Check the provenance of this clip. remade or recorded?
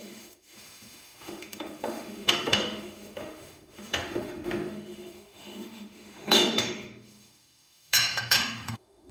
remade